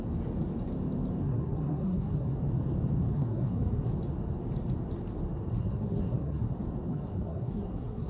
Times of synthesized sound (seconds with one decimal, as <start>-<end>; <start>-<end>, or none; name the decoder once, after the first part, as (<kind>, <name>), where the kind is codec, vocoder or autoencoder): 1.2-2.4 (codec, SNAC); 3.1-3.9; 5.6-6.5; 6.9-8.1